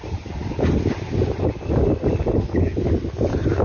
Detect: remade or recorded recorded